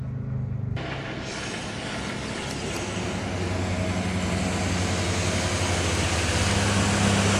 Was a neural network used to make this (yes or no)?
no